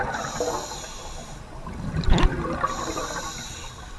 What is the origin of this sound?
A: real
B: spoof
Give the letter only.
A